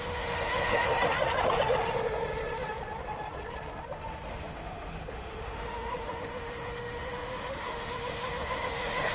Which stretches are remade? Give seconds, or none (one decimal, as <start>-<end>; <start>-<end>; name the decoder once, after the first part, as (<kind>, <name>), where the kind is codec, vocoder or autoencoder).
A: 0.0-0.9 (autoencoder, DAC-VAE); 4.3-9.1